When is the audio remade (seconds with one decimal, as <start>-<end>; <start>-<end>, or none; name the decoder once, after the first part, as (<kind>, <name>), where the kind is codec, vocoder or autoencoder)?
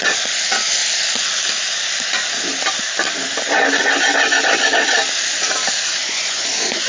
6.0-6.9 (vocoder, Vocos)